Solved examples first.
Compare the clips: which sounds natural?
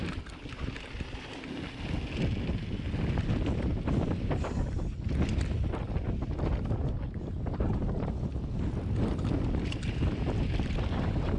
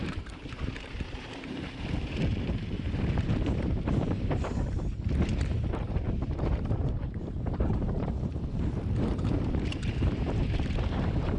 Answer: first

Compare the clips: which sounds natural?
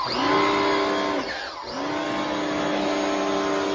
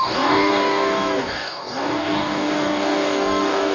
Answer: first